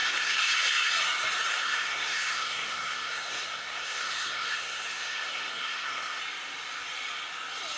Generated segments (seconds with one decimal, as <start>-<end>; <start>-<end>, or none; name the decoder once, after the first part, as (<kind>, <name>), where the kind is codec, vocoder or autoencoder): 0.0-0.9 (codec, SNAC); 1.5-6.2